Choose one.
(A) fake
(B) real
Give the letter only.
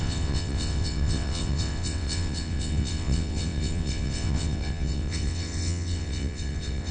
A